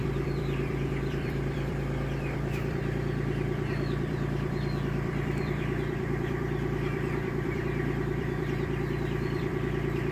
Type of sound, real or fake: fake